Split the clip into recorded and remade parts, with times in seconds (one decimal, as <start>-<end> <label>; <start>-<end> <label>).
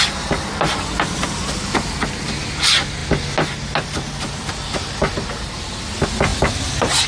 0.0-7.1 recorded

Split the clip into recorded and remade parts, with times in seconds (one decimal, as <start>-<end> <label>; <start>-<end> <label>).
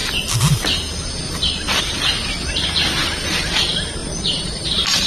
0.0-4.0 recorded; 4.0-5.1 remade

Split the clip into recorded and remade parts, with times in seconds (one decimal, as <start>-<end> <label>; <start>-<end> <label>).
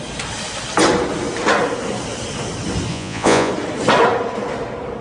0.0-2.9 recorded; 2.9-3.5 remade; 3.5-5.0 recorded